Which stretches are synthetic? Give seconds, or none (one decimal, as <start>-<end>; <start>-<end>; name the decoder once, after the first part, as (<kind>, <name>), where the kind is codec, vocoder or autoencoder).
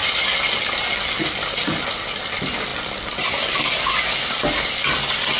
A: none